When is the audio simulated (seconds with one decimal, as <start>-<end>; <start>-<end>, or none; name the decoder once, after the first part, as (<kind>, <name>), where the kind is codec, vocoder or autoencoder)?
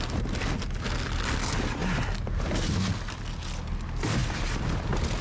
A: none